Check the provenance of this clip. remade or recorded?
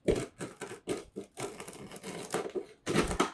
recorded